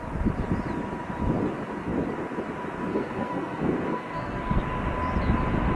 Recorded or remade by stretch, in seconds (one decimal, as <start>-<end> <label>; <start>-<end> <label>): 0.0-2.9 recorded; 2.9-4.6 remade; 4.6-5.8 recorded